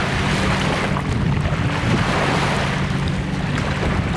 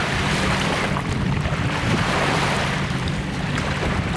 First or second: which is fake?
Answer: second